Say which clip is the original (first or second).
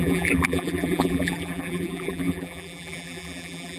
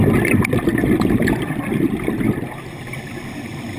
second